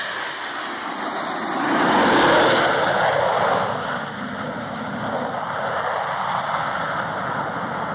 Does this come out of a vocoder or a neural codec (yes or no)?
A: no